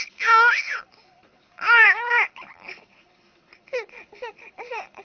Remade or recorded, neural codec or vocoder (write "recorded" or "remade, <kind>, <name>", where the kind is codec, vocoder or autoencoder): remade, codec, HILCodec